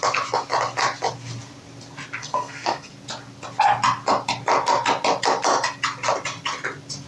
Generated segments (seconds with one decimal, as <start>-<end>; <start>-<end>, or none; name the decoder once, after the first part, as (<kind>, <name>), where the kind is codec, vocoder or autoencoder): 2.2-2.9 (codec, SNAC)